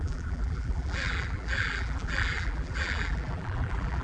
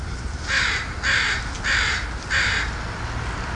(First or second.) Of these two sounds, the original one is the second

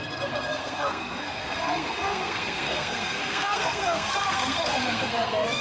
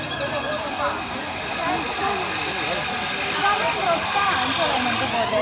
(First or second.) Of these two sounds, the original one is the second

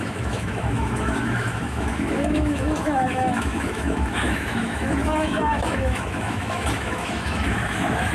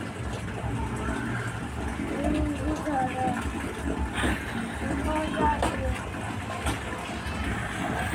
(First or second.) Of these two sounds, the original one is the second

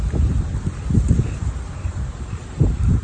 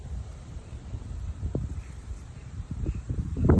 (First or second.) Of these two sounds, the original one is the first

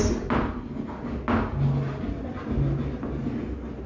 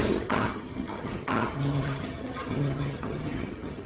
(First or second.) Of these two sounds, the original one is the first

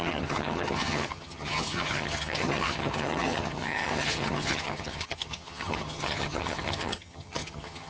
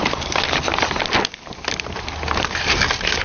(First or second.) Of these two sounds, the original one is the second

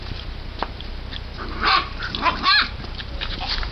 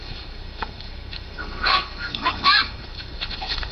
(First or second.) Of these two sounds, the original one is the first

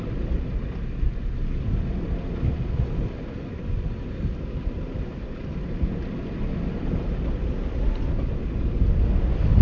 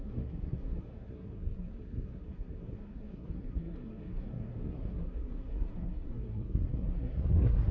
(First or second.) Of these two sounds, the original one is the first